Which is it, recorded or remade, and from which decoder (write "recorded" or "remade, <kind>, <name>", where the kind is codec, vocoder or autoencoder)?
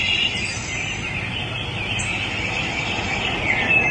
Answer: recorded